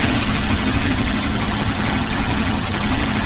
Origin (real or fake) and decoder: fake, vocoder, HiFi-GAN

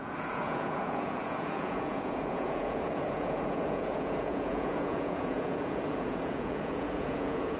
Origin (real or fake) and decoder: fake, vocoder, Vocos